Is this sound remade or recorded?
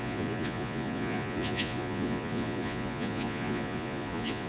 remade